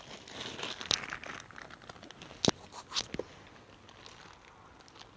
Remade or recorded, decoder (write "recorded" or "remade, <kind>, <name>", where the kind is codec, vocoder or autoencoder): recorded